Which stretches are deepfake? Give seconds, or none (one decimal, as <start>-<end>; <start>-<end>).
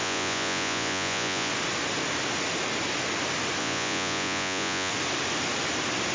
0.0-1.5; 3.6-4.9